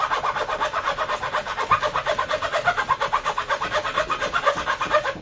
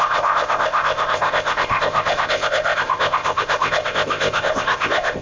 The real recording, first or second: first